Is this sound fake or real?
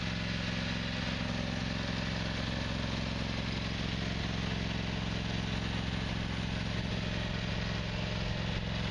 real